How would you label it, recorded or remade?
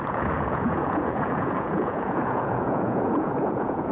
remade